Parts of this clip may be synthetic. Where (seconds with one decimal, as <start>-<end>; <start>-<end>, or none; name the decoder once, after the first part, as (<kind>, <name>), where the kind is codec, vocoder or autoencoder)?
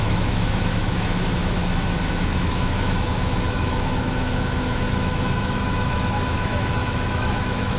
0.0-1.6 (autoencoder, DAC-VAE); 2.1-7.8